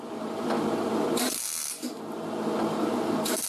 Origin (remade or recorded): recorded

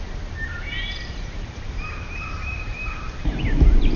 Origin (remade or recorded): remade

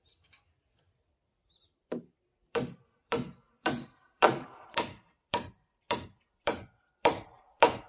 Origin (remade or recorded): remade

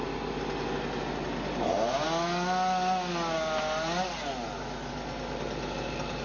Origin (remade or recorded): recorded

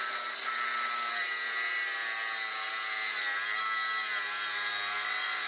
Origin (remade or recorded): recorded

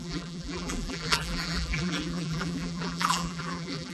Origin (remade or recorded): remade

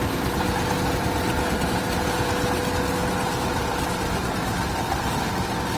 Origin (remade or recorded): recorded